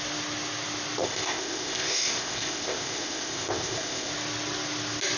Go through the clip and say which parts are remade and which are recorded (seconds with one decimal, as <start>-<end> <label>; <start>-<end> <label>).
0.0-1.0 recorded; 1.0-4.1 remade; 4.1-5.2 recorded